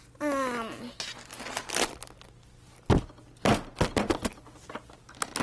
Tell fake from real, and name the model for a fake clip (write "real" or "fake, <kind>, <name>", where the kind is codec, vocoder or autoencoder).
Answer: real